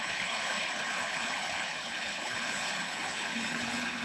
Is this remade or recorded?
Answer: remade